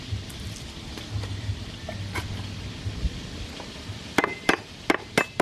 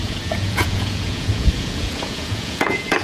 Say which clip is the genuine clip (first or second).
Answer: first